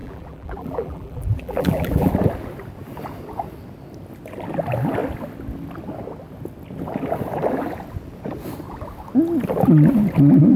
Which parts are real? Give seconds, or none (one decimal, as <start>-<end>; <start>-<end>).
2.1-10.6